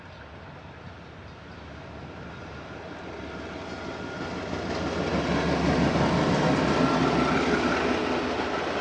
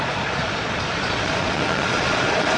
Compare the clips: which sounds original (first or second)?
first